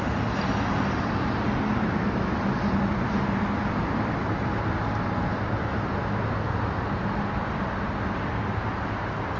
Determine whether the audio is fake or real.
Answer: real